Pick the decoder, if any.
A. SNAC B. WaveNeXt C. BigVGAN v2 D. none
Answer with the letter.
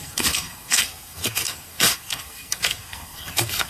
A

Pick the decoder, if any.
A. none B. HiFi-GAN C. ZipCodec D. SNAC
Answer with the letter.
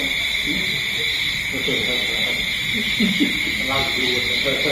A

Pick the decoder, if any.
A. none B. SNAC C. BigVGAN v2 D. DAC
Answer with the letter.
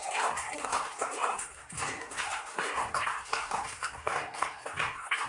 B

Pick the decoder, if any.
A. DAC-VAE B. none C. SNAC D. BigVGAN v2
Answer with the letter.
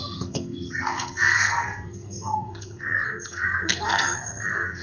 C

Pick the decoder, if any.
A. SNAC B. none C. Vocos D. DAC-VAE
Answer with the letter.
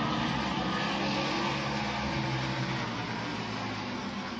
B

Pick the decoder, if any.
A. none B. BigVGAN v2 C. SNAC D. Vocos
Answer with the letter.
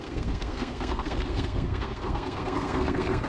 C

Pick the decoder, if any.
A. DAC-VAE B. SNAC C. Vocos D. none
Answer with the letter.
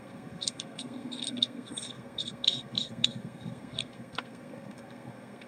B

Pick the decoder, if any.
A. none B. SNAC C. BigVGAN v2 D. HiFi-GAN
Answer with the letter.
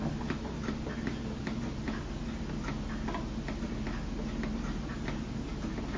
A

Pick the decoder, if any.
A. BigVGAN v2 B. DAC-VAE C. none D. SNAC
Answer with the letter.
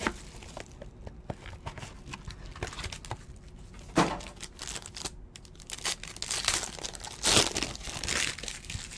C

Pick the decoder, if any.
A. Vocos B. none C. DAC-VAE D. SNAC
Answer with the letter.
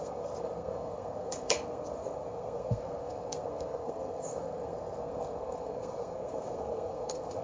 D